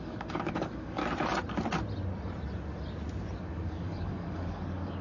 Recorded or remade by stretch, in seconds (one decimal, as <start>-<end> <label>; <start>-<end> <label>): 0.0-1.0 remade; 1.0-3.4 recorded; 3.4-5.0 remade